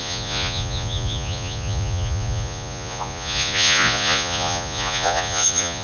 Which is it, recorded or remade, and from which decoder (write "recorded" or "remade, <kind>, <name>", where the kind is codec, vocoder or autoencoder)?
remade, vocoder, Vocos